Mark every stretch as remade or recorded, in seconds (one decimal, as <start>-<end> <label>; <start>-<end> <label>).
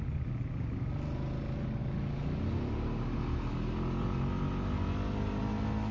0.0-5.9 recorded